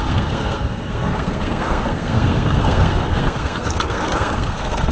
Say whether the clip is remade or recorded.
remade